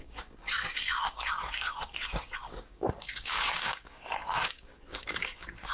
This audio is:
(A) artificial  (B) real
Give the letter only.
A